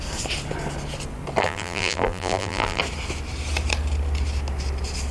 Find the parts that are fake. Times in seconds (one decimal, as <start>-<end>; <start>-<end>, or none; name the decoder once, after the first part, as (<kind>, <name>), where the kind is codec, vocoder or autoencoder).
1.4-2.8 (vocoder, BigVGAN v2)